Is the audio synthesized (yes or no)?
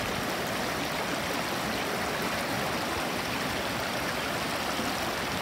no